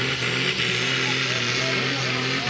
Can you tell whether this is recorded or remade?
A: recorded